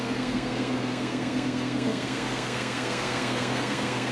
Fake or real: fake